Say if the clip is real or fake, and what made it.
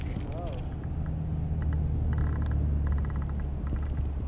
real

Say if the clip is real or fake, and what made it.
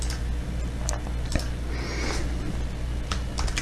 real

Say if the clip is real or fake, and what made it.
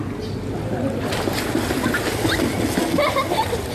real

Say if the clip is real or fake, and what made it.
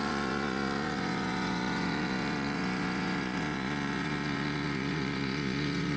fake, vocoder, Vocos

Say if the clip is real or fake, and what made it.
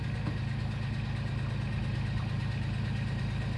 real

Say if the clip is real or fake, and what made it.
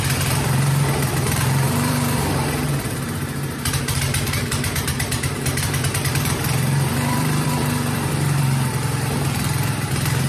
fake, vocoder, BigVGAN v2